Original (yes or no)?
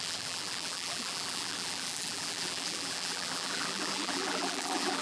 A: no